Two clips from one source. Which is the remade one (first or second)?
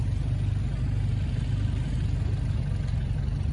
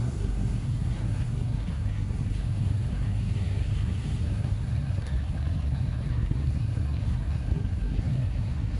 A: second